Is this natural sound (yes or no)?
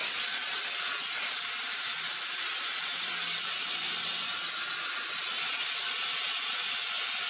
no